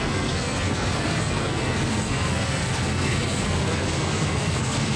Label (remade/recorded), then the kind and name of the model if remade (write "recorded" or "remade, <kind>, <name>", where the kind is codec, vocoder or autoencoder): remade, codec, SNAC